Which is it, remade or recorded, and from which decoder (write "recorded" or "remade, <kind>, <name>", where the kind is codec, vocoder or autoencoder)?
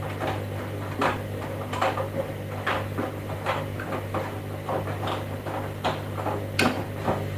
recorded